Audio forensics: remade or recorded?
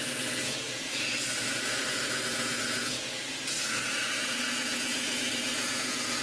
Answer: remade